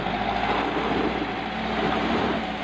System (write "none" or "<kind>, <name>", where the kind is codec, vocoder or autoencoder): none